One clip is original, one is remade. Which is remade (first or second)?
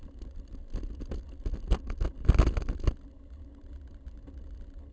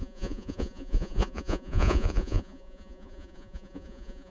second